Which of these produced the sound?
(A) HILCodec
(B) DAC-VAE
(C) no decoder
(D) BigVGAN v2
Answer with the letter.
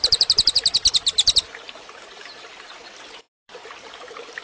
D